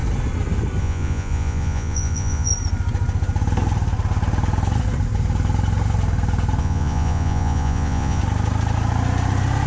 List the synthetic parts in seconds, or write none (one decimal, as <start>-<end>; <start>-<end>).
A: 0.8-2.5; 6.6-8.2